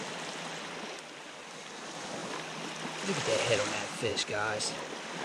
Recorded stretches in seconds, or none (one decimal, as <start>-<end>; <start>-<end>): 2.2-3.5; 4.1-5.2